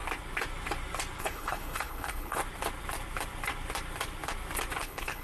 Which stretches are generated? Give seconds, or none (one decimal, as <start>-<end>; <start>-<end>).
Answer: 1.2-2.4; 4.8-5.2